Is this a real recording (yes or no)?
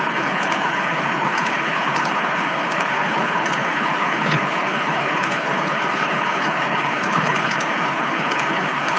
no